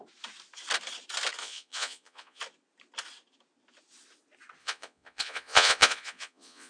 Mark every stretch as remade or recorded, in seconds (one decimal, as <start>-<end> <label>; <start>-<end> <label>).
0.0-1.4 recorded; 1.4-2.4 remade; 2.4-4.6 recorded; 4.6-6.7 remade